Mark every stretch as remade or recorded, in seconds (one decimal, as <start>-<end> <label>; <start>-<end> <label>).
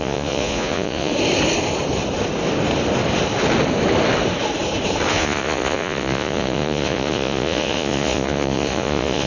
0.0-1.1 remade; 1.1-5.1 recorded; 5.1-9.3 remade